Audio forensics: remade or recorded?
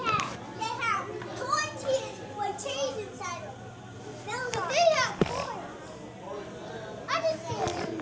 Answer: recorded